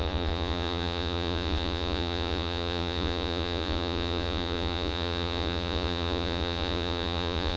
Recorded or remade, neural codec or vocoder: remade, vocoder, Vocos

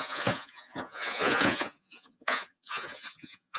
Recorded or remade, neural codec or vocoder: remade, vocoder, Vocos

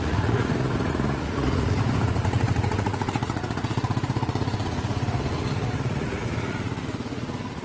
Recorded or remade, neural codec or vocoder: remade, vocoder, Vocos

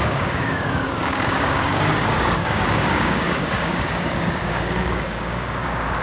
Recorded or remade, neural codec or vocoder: remade, codec, DAC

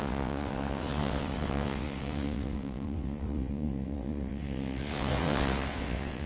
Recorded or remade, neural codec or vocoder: remade, vocoder, WaveNeXt